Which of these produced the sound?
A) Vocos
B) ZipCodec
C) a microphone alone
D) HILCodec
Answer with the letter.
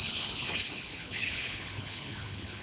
D